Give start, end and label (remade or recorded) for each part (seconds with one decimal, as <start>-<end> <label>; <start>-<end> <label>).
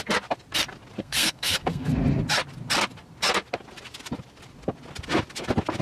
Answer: 0.0-1.0 recorded; 1.0-1.9 remade; 1.9-5.8 recorded